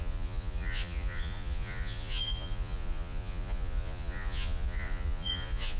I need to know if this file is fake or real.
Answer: fake